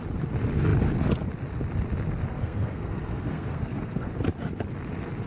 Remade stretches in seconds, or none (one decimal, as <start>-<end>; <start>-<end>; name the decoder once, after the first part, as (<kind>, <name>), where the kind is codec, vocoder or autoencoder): 2.3-4.1 (codec, SNAC)